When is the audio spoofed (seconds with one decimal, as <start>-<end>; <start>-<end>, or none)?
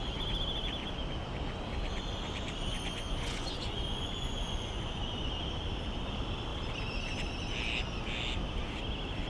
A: 2.7-5.3